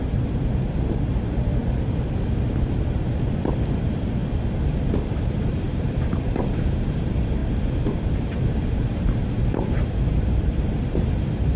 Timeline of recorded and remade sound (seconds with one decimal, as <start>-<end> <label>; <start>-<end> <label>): 0.0-1.6 remade; 1.6-3.6 recorded; 3.6-4.2 remade; 4.2-5.5 recorded; 5.5-11.6 remade